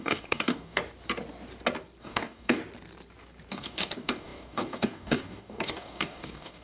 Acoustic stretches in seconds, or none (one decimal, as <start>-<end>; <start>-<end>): 0.8-2.0; 2.6-3.5